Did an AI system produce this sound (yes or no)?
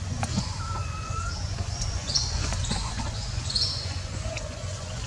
yes